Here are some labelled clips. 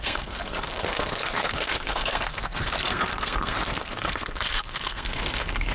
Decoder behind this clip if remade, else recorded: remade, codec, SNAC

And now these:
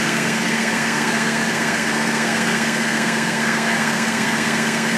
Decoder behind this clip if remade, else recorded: remade, codec, SNAC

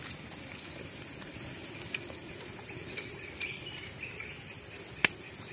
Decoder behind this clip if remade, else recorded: recorded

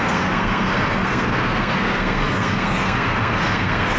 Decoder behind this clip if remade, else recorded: remade, codec, SNAC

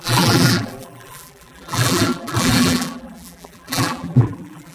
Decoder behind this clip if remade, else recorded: remade, vocoder, BigVGAN v2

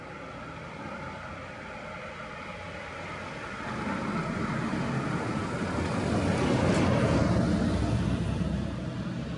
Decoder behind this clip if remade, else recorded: recorded